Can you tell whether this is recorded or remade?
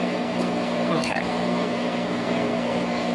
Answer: remade